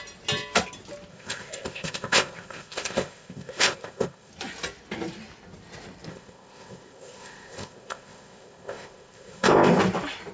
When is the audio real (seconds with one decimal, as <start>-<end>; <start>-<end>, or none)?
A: 0.0-1.1; 4.3-6.1; 9.8-10.3